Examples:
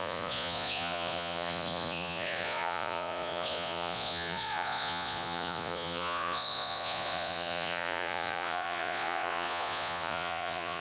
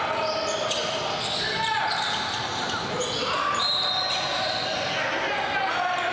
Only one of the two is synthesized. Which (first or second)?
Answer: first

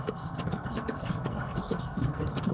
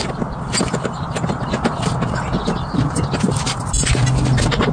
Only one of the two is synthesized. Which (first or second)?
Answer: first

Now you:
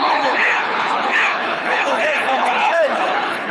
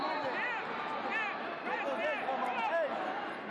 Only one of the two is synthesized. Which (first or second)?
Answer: first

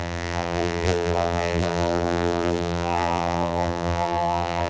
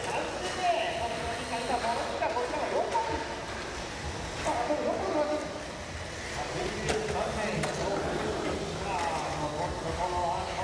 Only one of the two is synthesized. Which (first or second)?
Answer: first